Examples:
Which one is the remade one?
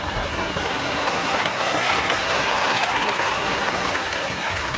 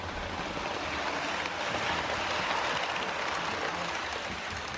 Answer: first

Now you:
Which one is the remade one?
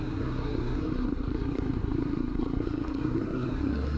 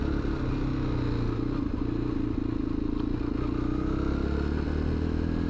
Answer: first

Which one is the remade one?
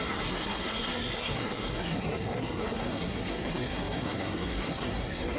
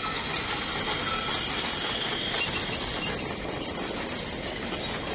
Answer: first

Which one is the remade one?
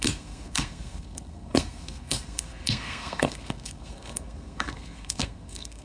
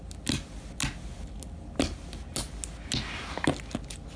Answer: first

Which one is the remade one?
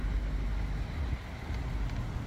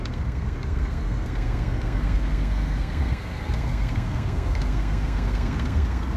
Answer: second